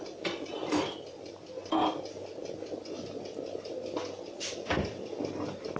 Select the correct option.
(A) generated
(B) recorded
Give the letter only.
B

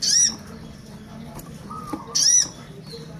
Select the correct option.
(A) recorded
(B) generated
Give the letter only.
A